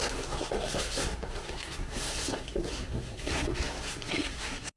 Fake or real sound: fake